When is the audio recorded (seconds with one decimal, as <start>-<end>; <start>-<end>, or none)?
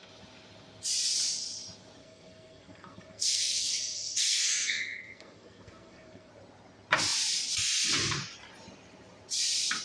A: 0.0-2.0; 6.3-9.8